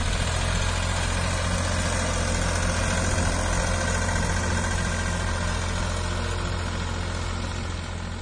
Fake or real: real